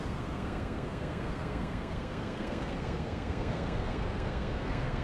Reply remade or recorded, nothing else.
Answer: remade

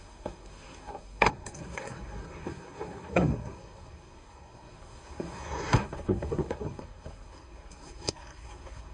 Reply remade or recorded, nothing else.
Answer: remade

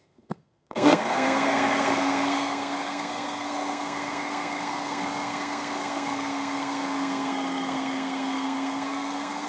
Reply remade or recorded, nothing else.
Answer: remade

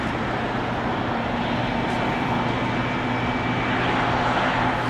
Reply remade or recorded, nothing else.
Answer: recorded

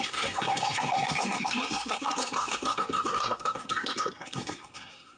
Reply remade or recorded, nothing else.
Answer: remade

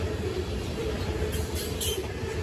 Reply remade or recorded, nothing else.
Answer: recorded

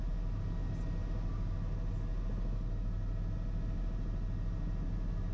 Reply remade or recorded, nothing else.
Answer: recorded